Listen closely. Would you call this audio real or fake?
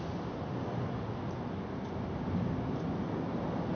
real